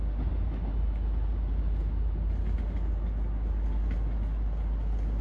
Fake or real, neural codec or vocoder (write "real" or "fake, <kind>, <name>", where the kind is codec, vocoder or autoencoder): real